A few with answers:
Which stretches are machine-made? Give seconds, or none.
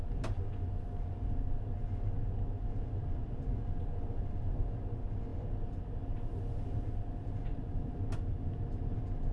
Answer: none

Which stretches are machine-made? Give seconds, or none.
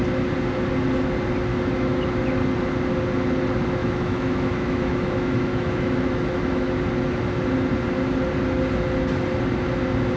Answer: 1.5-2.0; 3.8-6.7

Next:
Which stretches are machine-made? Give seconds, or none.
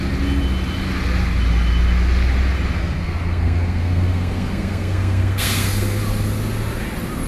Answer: 2.8-6.0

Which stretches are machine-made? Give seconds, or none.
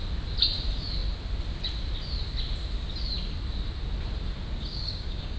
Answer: 4.7-5.4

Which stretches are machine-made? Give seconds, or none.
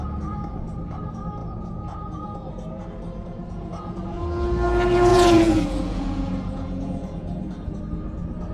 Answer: 1.4-2.8; 3.2-4.2; 5.1-7.8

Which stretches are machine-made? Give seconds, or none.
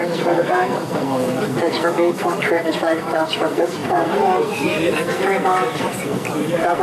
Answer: 0.0-6.8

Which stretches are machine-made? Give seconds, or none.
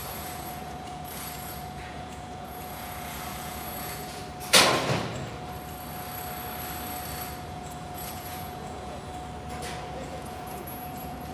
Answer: 0.0-4.2; 7.4-9.1; 9.6-11.3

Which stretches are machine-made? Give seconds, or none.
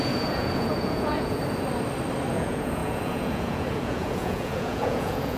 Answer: 0.0-1.4; 2.3-5.4